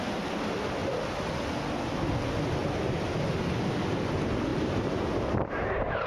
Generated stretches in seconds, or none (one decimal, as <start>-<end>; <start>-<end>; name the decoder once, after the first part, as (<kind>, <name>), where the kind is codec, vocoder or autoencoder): 4.5-6.1 (vocoder, BigVGAN v2)